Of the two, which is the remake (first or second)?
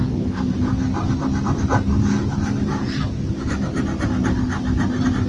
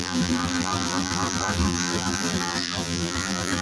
second